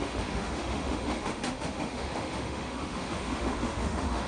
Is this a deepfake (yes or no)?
yes